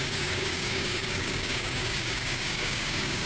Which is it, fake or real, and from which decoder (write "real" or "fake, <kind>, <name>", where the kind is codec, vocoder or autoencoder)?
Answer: fake, codec, DAC